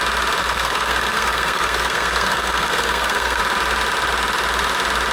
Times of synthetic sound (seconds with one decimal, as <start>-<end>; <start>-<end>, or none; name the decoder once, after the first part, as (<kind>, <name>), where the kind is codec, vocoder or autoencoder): 0.4-3.4 (codec, SNAC)